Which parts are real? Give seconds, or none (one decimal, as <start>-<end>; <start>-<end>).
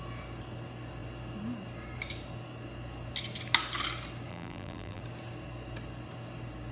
0.0-4.3; 5.0-6.7